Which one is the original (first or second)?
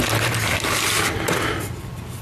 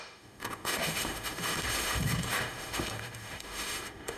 first